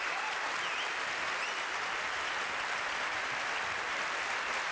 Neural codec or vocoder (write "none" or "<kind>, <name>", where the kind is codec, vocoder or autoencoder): none